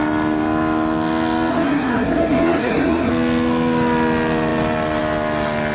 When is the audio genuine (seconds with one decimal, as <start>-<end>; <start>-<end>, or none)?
0.0-1.5; 3.1-5.7